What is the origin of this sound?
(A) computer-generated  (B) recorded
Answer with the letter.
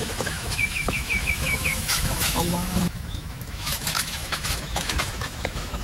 A